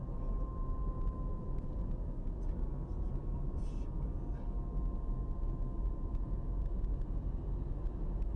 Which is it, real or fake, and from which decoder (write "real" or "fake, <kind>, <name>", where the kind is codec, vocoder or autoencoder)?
real